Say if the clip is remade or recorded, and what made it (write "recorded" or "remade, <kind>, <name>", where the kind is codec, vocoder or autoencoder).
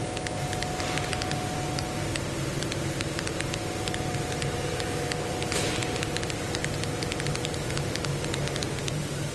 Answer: remade, vocoder, BigVGAN v2